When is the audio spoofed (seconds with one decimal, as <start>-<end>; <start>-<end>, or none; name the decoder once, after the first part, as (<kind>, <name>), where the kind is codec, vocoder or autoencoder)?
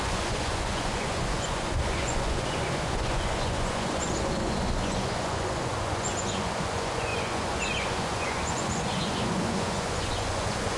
0.0-10.8 (vocoder, Vocos)